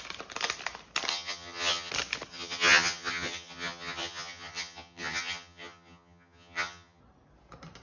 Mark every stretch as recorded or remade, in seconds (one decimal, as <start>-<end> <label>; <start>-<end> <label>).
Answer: 0.0-1.1 recorded; 1.1-1.9 remade; 1.9-2.3 recorded; 2.3-7.0 remade; 7.0-7.8 recorded